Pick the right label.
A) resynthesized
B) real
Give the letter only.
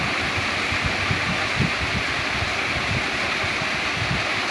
B